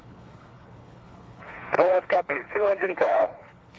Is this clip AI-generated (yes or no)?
yes